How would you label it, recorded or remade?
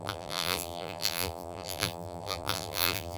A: remade